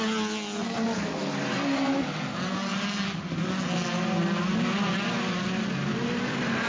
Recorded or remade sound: recorded